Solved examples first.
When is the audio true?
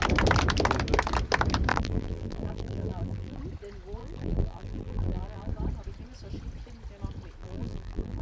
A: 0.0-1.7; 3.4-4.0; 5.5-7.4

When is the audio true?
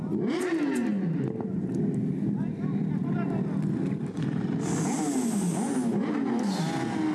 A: 0.0-7.1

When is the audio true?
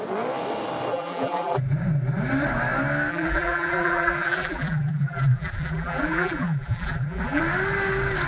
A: 0.0-0.9; 1.6-3.1; 7.4-8.3